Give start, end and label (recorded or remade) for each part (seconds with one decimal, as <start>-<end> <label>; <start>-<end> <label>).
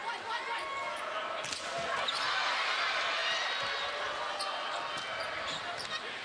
0.0-6.2 recorded